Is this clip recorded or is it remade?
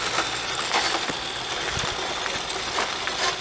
recorded